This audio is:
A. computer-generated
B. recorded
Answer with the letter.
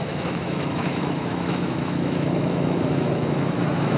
A